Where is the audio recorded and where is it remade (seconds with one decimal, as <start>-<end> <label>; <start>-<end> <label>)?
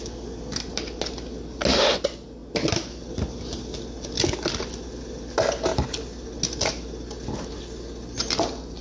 0.0-8.8 recorded